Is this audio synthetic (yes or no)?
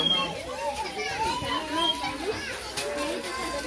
no